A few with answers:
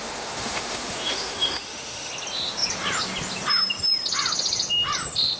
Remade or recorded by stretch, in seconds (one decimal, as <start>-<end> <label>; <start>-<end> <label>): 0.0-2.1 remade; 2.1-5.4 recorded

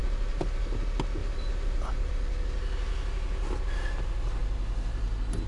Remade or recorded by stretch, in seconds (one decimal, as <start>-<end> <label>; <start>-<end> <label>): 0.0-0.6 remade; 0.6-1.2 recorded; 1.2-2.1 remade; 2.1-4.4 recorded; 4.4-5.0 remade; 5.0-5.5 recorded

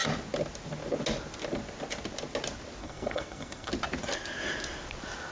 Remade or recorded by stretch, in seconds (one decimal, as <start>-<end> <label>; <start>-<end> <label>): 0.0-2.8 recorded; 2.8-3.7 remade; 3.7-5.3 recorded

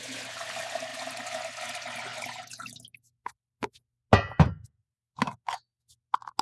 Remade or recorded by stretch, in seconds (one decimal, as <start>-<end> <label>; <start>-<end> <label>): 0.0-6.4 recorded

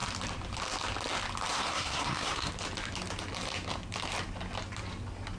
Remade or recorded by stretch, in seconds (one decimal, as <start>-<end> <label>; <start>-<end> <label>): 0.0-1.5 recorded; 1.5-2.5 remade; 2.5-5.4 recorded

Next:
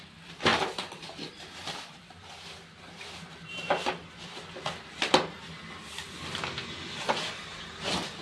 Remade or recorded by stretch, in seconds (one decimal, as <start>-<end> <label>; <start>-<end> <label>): 0.0-0.5 recorded; 0.5-2.6 remade; 2.6-4.0 recorded; 4.0-6.4 remade; 6.4-8.2 recorded